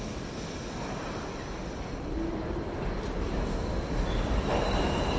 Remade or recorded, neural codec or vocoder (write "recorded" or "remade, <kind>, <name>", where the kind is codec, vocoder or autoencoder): recorded